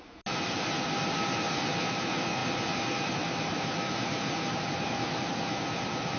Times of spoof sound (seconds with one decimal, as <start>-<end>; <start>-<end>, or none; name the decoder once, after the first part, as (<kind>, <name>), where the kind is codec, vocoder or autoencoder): none